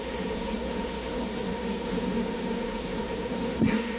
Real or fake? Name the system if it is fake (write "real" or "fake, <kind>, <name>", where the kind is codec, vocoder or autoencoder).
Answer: fake, codec, SNAC